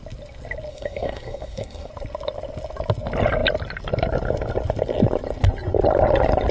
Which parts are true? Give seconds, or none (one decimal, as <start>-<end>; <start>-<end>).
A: 0.0-0.7; 1.9-6.5